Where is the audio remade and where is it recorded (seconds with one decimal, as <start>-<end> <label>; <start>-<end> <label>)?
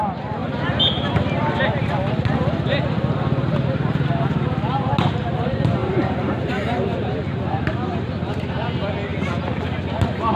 0.0-5.8 recorded; 5.8-8.6 remade; 8.6-10.4 recorded